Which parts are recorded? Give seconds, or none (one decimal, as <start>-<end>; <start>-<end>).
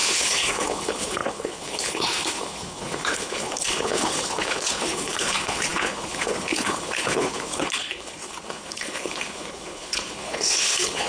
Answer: none